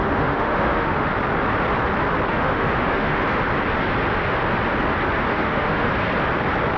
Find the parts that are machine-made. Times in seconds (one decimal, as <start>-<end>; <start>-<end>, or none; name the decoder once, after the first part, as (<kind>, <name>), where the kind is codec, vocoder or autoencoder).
0.0-1.1 (autoencoder, DAC-VAE); 2.3-3.2; 5.3-5.9